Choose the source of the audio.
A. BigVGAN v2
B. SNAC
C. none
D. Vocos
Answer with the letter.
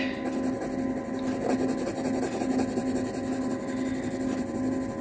C